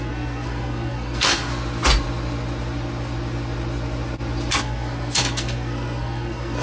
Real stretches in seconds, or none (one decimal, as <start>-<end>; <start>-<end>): 1.5-4.5

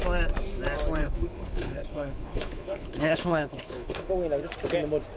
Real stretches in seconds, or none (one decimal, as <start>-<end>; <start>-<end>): 0.0-1.0; 4.1-5.2

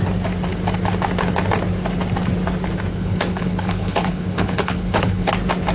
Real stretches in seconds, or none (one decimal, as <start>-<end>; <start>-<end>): 0.0-2.9; 5.3-5.7

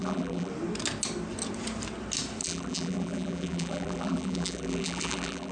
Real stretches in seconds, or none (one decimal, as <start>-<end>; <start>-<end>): 0.5-2.4

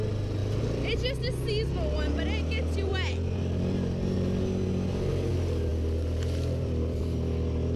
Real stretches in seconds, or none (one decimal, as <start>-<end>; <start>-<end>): 0.0-5.7; 7.0-7.8

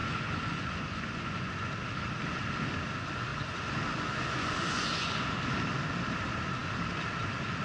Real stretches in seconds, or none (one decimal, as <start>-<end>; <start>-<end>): 1.7-3.3; 5.3-7.6

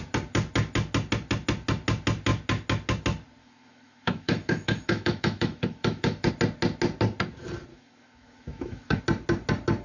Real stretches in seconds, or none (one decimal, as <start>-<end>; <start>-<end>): 0.0-3.4; 6.3-7.7; 9.0-9.8

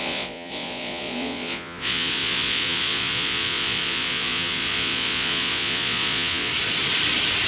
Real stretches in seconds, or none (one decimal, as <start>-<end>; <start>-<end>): 6.5-7.5